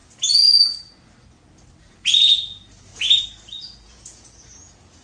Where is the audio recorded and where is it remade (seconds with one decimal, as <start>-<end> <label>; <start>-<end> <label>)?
0.0-1.8 recorded; 1.8-2.9 remade; 2.9-3.5 recorded; 3.5-5.0 remade